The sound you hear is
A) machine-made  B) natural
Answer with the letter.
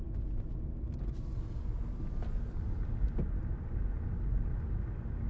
B